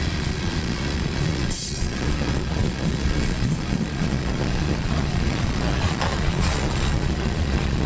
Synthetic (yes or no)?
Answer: yes